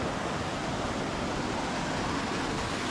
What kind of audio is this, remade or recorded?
recorded